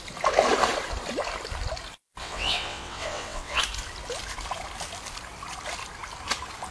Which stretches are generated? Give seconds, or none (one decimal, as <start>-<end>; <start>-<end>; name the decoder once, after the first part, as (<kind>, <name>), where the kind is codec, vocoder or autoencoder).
2.2-3.6 (vocoder, WaveNeXt)